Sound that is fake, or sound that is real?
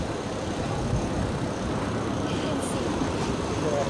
fake